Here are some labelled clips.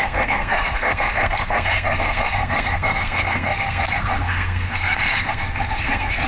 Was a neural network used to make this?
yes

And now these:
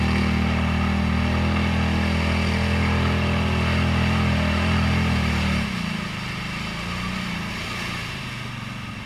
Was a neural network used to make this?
no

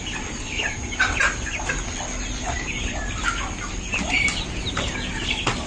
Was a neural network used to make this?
no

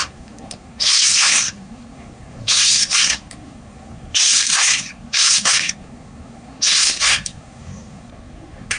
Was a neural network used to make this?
yes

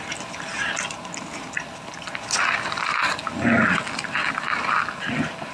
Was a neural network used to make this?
no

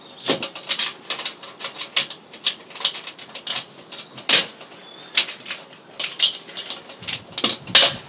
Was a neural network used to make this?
no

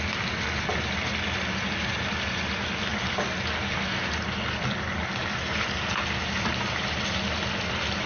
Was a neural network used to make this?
no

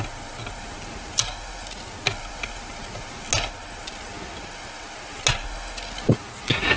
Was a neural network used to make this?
no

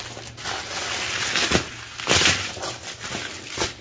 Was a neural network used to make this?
no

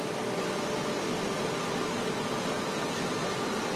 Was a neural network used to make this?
no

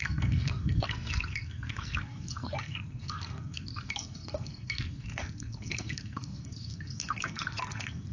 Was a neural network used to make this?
yes